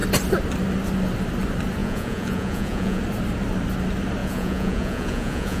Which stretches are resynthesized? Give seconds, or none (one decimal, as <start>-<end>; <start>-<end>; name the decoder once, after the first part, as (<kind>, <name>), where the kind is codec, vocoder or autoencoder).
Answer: 1.8-3.0 (vocoder, Vocos); 4.2-5.6